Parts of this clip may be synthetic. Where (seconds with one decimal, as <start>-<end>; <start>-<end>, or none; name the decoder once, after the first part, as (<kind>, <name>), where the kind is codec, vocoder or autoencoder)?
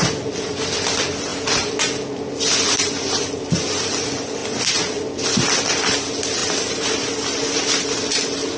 none